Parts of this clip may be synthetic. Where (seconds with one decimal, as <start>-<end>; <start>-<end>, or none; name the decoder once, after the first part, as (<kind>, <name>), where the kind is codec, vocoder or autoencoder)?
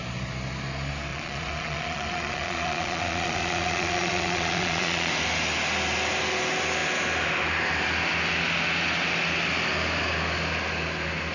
1.1-5.1 (vocoder, Vocos)